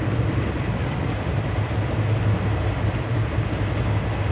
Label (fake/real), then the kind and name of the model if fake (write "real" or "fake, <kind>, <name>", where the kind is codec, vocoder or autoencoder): real